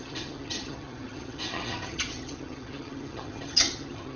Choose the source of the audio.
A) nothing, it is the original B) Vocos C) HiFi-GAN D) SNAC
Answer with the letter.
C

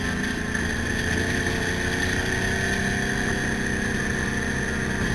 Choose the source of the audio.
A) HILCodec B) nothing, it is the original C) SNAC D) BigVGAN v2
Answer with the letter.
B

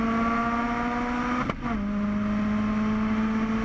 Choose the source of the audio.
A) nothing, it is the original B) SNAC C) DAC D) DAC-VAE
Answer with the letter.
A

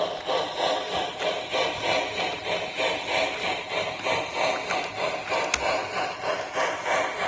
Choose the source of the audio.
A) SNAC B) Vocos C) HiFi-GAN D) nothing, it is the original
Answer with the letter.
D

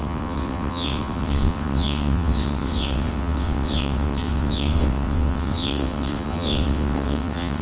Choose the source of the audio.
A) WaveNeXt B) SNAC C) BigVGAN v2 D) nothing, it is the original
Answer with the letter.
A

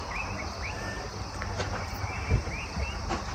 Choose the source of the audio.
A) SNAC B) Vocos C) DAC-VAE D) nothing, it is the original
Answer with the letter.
D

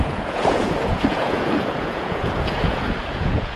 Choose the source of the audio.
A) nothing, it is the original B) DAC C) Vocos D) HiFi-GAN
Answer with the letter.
C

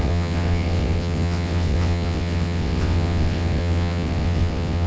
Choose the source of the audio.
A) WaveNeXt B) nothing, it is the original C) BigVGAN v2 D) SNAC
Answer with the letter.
A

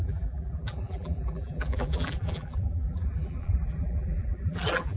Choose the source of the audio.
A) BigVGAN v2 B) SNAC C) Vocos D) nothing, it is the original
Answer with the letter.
A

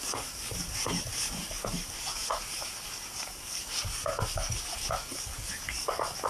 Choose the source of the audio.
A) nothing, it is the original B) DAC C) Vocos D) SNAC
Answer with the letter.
B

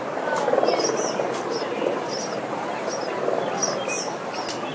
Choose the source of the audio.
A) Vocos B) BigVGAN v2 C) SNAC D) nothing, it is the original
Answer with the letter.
D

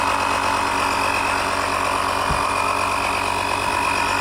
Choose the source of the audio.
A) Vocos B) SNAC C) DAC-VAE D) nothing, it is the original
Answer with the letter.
D